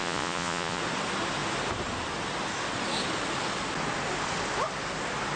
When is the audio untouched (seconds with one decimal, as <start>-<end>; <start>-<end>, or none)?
0.8-5.4